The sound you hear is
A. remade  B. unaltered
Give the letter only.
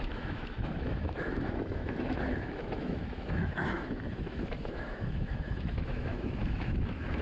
A